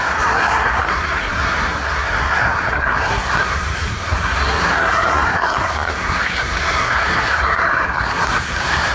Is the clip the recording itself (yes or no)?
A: no